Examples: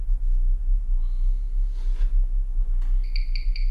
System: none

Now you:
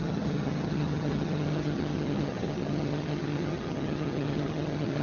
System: vocoder, HiFi-GAN